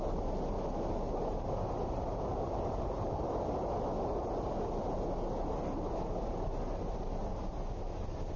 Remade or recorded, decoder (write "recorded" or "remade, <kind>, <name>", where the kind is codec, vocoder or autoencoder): recorded